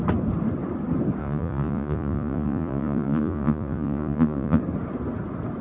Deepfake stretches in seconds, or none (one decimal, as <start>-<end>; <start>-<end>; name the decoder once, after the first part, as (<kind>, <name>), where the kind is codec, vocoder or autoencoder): 1.2-4.6 (vocoder, Vocos)